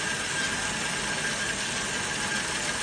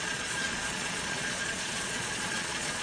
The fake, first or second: second